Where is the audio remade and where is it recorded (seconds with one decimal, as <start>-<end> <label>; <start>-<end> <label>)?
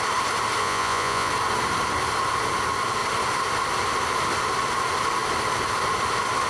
0.0-0.6 recorded; 0.6-1.3 remade; 1.3-6.5 recorded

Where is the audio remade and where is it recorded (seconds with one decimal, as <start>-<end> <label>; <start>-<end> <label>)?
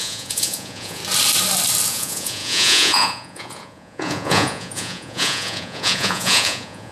0.0-1.0 remade; 1.0-1.9 recorded; 1.9-6.9 remade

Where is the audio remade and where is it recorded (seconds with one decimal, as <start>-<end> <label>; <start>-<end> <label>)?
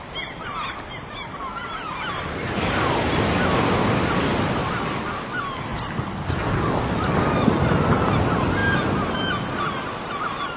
0.0-10.6 recorded